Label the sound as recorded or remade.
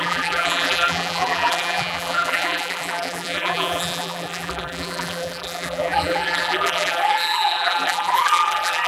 remade